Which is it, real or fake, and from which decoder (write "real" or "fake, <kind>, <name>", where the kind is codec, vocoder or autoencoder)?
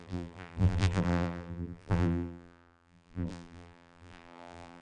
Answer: fake, vocoder, BigVGAN v2